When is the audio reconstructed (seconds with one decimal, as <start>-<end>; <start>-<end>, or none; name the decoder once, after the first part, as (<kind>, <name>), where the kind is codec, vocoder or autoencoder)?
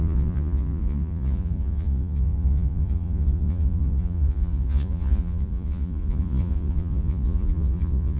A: 0.0-8.2 (vocoder, Vocos)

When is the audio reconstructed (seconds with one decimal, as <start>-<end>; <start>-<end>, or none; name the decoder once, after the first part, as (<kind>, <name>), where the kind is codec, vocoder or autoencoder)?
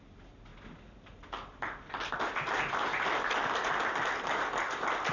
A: none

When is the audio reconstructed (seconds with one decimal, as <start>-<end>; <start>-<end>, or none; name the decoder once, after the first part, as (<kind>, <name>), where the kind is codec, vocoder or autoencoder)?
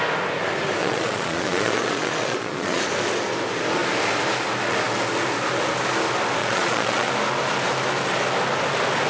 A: 0.8-2.8 (vocoder, Vocos); 6.4-7.1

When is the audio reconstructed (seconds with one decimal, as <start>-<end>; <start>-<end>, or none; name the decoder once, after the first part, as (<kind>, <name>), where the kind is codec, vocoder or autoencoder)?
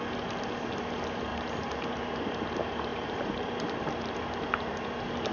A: 1.3-1.9 (vocoder, BigVGAN v2); 2.9-4.2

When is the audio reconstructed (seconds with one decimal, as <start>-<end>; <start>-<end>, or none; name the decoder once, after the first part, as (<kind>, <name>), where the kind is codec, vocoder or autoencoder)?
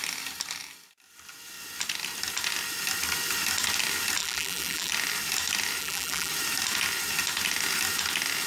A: 4.2-4.9 (vocoder, BigVGAN v2); 5.8-6.3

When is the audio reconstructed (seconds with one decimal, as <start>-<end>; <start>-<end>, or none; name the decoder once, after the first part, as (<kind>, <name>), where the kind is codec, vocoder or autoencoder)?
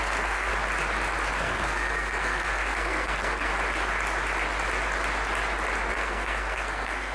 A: 0.0-0.5 (codec, SNAC); 1.3-3.5; 5.9-7.1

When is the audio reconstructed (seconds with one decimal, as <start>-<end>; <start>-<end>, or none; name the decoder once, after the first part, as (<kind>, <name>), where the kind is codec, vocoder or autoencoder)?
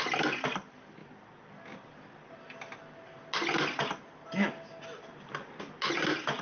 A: none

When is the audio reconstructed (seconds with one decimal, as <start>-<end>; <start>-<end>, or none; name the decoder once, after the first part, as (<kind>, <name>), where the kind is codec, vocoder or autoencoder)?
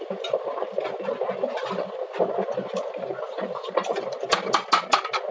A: none